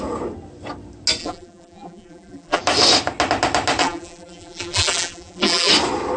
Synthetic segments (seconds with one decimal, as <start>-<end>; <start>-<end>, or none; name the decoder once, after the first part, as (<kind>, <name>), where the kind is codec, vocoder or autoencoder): 1.2-2.6 (vocoder, BigVGAN v2); 3.8-5.7